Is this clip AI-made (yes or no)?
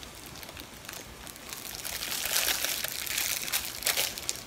no